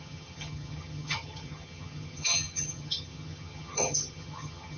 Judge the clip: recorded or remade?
remade